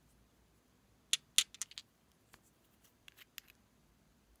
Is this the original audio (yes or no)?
yes